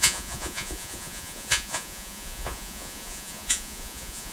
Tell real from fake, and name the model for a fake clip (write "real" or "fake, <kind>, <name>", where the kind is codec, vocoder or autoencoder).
fake, vocoder, Vocos